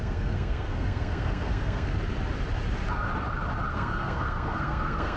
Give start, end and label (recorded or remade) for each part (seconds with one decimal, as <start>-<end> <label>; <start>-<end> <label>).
0.0-1.9 remade; 1.9-3.7 recorded; 3.7-5.2 remade